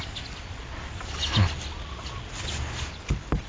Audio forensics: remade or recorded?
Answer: recorded